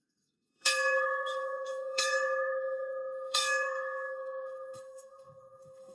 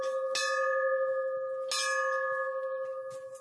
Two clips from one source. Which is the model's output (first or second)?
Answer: first